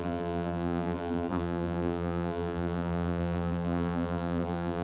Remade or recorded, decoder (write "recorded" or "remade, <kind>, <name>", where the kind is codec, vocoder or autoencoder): remade, vocoder, BigVGAN v2